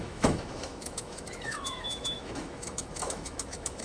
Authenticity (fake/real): fake